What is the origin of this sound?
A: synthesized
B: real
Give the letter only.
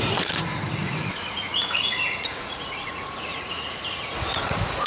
A